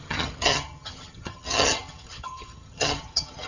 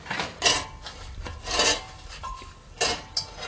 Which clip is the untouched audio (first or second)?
second